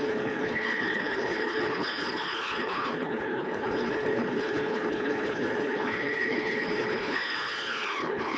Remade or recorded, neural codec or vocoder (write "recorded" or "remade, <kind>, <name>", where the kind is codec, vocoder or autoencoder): remade, codec, HILCodec